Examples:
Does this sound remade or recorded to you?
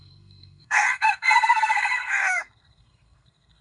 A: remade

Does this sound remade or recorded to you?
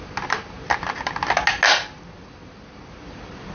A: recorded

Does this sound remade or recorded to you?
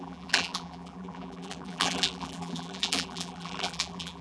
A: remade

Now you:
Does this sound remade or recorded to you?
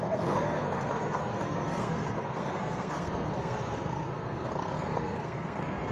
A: remade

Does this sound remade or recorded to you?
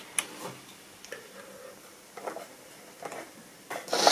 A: recorded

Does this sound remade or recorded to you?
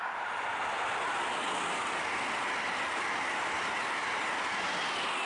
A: recorded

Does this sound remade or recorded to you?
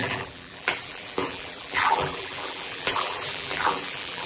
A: remade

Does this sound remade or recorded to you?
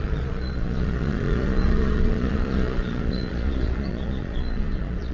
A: remade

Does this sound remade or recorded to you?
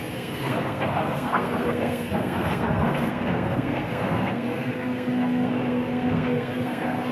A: remade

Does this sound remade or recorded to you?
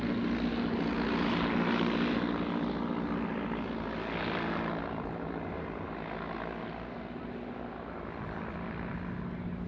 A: recorded